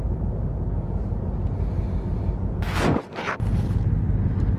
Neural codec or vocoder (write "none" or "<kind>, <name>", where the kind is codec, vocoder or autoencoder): none